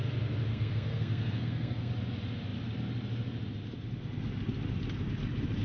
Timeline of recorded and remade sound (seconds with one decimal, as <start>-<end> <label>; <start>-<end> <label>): 0.0-0.5 recorded; 0.5-1.9 remade; 1.9-5.6 recorded